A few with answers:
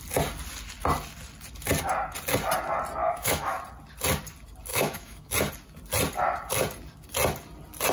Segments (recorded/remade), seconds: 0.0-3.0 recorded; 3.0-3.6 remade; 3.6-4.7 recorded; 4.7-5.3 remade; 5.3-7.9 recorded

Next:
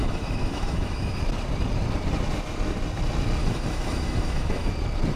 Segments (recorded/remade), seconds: 0.0-1.2 remade; 1.2-3.4 recorded; 3.4-4.7 remade; 4.7-5.2 recorded

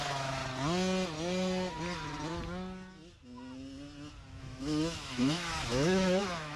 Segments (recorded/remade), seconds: 0.0-0.4 remade; 0.4-4.4 recorded; 4.4-6.6 remade